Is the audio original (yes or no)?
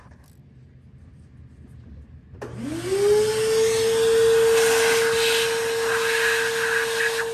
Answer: yes